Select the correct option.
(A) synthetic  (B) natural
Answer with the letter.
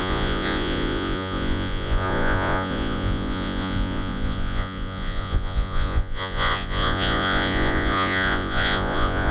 A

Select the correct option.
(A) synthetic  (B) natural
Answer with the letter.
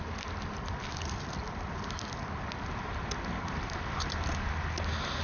B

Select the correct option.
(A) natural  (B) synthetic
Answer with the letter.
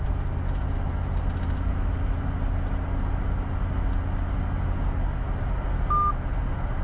A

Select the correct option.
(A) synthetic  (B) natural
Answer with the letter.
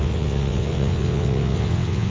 A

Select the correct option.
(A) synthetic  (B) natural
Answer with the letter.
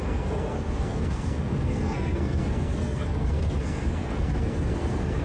A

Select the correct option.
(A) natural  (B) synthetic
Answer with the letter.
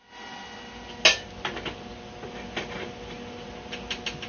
A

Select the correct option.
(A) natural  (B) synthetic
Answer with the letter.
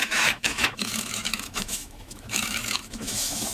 B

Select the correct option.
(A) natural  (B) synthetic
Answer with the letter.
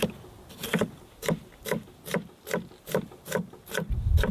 A